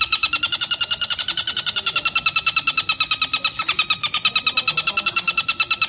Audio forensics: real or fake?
real